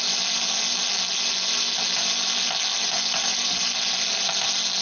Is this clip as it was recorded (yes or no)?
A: yes